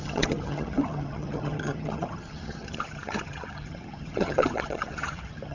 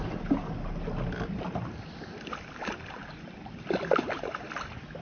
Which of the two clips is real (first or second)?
second